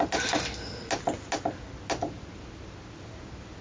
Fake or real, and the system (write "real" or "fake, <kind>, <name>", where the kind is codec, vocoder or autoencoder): real